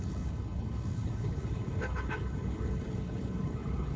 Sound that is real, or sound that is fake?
fake